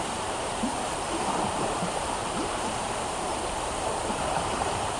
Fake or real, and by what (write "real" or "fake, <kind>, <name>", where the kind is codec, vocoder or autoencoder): fake, vocoder, BigVGAN v2